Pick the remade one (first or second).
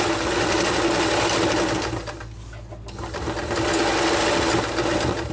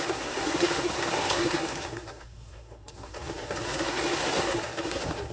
second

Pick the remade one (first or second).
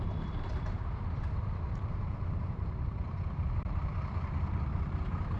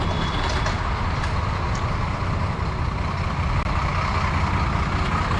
first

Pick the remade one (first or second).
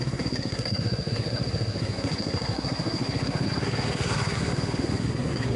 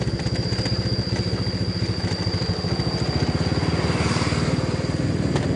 first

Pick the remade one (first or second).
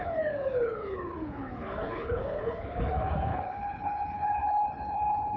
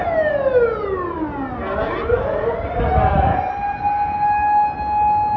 first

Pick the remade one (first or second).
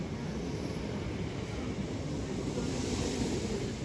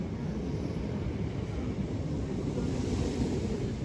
second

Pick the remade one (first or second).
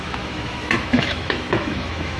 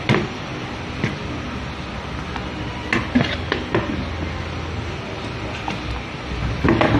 first